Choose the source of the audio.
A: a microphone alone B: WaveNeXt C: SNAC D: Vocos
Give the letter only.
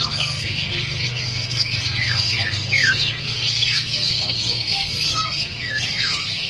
C